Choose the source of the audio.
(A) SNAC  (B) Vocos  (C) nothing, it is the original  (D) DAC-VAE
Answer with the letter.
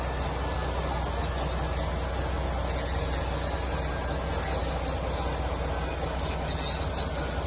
C